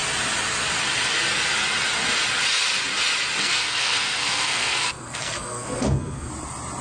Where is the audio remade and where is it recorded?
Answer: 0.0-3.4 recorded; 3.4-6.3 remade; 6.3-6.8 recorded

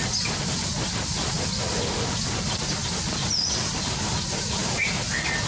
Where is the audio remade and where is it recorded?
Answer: 0.0-5.5 recorded

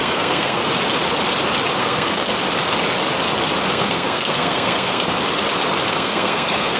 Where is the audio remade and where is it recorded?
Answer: 0.0-0.6 remade; 0.6-1.8 recorded; 1.8-2.3 remade; 2.3-3.7 recorded; 3.7-5.1 remade; 5.1-5.9 recorded; 5.9-6.8 remade

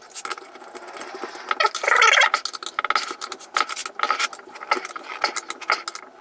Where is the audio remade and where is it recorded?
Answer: 0.0-6.2 recorded